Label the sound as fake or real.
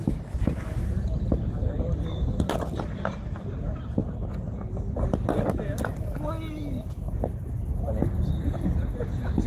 real